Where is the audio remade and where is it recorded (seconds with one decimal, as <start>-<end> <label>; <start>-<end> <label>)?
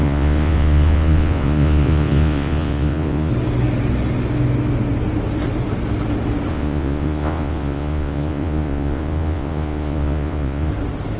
0.0-3.3 remade; 3.3-6.5 recorded; 6.5-10.7 remade; 10.7-11.2 recorded